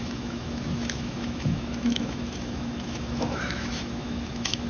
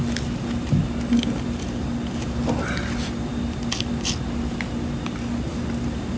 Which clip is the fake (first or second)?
first